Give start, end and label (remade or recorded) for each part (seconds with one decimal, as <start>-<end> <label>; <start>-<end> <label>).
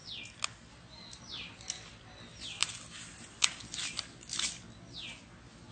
0.0-5.7 recorded